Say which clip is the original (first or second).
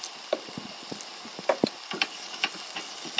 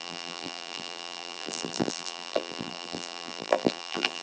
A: first